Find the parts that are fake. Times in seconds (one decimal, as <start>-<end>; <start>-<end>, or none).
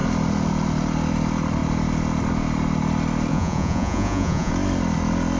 3.3-4.5